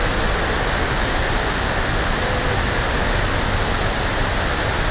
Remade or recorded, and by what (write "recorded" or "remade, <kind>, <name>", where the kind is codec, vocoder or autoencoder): recorded